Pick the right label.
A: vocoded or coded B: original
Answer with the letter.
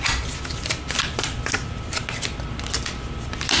B